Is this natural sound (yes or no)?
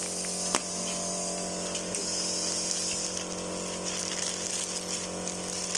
yes